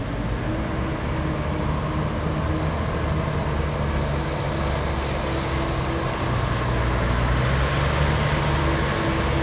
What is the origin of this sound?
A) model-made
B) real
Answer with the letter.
B